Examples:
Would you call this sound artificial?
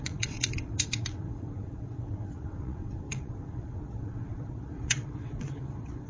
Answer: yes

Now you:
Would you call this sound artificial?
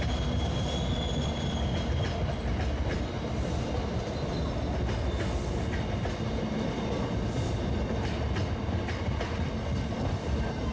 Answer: no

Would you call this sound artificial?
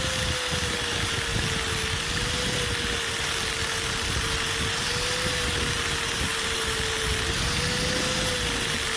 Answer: no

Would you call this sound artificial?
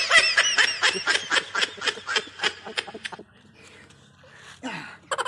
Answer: no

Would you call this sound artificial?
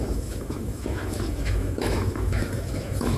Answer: yes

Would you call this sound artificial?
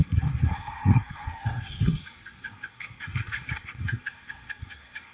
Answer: yes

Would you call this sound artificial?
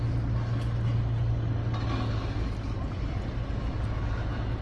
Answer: no